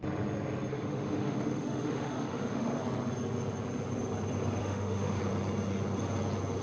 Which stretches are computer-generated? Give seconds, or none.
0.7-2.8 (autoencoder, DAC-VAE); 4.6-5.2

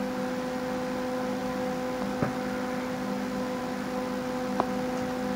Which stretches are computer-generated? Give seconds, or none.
none

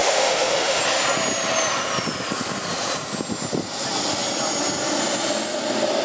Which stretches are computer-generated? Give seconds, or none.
0.0-0.8 (autoencoder, DAC-VAE)

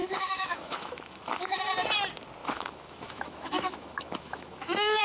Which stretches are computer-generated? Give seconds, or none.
0.0-1.6 (autoencoder, DAC-VAE); 2.4-5.0

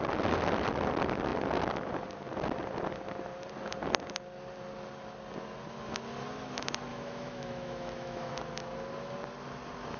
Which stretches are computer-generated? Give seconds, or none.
6.9-8.3 (autoencoder, DAC-VAE)

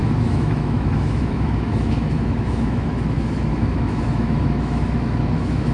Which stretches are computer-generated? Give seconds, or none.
0.0-5.7 (autoencoder, DAC-VAE)

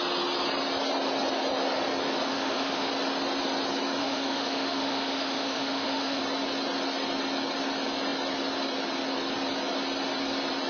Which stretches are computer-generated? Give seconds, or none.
2.3-2.9 (autoencoder, DAC-VAE); 4.0-6.2